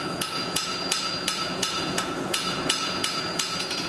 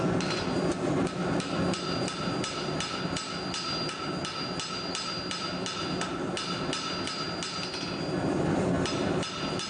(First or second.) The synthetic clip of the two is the first